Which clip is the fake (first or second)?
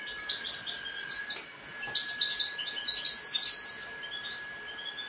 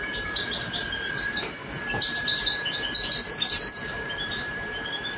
second